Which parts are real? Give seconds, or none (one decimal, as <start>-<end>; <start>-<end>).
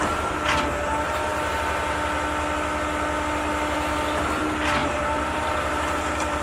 0.0-4.8